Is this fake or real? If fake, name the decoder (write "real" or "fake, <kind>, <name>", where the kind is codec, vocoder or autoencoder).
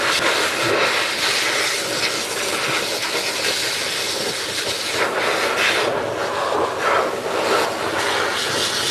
real